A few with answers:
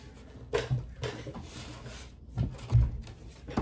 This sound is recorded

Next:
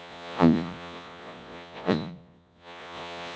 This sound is remade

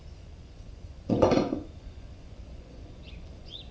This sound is remade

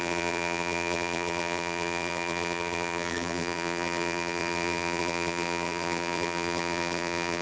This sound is remade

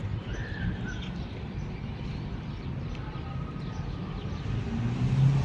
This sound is recorded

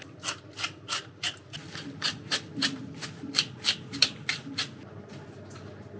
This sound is recorded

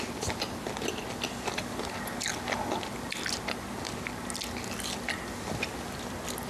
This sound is recorded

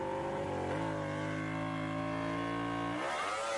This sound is recorded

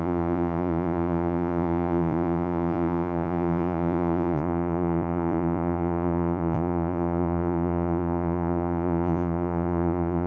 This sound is remade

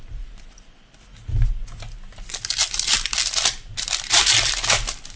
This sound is remade